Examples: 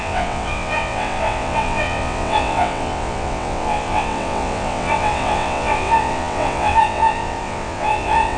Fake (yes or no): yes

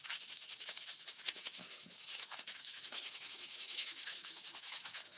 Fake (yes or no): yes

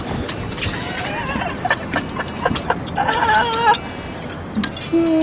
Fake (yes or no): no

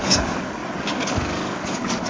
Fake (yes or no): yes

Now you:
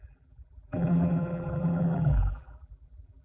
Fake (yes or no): yes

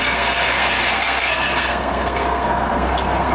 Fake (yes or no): yes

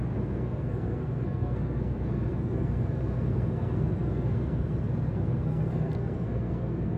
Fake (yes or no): yes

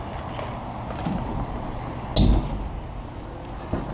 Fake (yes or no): no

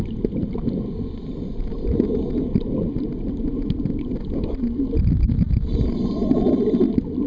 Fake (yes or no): no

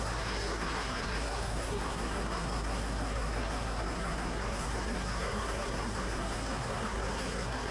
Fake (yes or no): yes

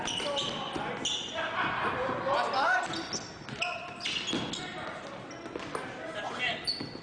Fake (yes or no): no